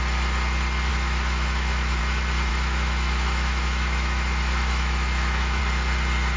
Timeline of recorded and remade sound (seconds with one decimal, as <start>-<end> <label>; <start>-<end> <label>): 0.0-0.9 recorded; 0.9-2.0 remade; 2.0-2.5 recorded; 2.5-5.6 remade; 5.6-6.4 recorded